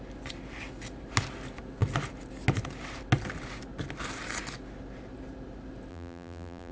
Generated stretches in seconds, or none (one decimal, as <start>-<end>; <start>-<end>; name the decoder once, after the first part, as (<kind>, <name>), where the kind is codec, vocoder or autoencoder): 5.9-6.7 (vocoder, BigVGAN v2)